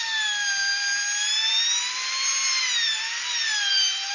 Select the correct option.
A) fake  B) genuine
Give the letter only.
A